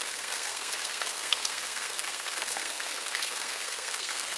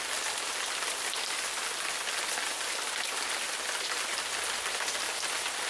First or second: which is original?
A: second